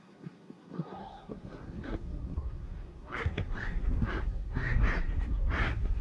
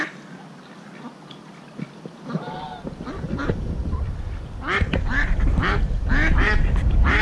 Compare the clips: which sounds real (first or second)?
second